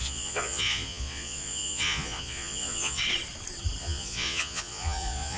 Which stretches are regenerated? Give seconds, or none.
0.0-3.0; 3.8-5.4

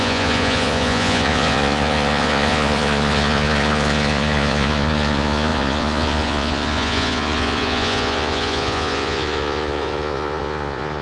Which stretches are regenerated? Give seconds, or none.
0.0-11.0

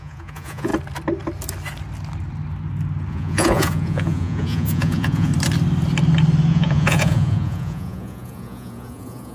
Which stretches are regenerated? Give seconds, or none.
0.0-0.7; 3.1-5.3; 6.5-9.3

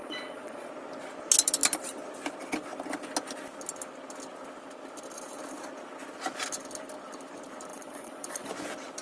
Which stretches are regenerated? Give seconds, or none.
0.0-0.7; 7.7-8.5

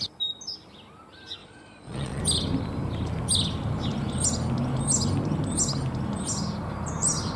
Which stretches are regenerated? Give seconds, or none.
1.4-2.2

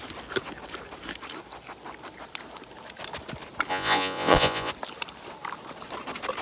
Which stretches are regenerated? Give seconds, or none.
3.7-4.7

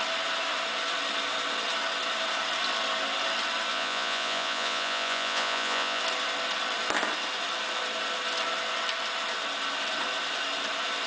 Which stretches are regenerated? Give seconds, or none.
3.7-6.0